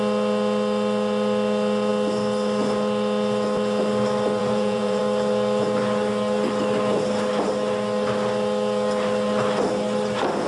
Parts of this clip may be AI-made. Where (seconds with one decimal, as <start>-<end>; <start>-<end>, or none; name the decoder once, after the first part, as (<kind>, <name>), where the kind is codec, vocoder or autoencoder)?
4.4-5.0 (vocoder, Vocos)

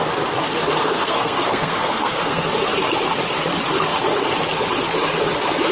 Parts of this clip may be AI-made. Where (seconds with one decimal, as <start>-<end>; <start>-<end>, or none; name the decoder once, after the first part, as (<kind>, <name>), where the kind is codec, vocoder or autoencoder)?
0.8-2.5 (codec, SNAC)

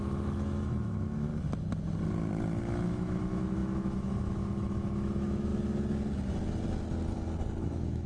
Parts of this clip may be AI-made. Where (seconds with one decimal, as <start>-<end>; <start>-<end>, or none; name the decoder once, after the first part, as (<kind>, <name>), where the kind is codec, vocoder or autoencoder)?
0.0-1.3 (autoencoder, DAC-VAE); 2.6-5.5; 7.6-8.1

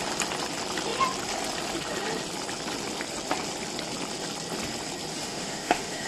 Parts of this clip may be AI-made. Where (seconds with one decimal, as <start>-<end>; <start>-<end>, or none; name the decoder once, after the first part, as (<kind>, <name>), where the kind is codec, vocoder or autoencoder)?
5.1-6.1 (autoencoder, DAC-VAE)

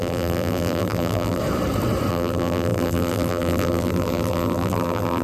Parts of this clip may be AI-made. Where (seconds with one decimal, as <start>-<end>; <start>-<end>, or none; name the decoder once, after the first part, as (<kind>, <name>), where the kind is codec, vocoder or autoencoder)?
0.0-1.4 (vocoder, BigVGAN v2); 2.1-5.2

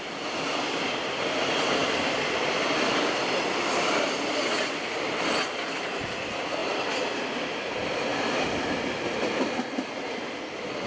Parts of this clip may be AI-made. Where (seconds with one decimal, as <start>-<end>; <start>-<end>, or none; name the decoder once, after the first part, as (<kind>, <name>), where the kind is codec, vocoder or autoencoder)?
1.8-4.4 (vocoder, BigVGAN v2); 8.1-8.7

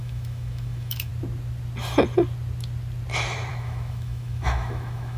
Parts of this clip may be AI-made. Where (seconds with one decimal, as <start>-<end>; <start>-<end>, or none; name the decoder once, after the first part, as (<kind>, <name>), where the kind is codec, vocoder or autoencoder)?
0.0-1.1 (autoencoder, DAC-VAE); 3.5-5.2

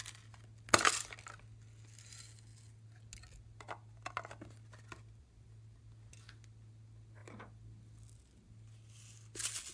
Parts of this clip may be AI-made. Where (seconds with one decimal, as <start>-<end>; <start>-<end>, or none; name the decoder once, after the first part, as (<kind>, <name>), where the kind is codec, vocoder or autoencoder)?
none